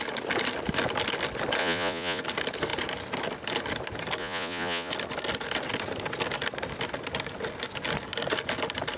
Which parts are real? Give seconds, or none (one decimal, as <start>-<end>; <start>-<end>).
0.0-1.6; 2.2-4.2; 4.9-9.0